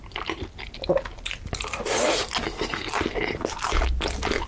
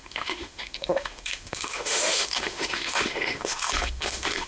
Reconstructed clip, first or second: second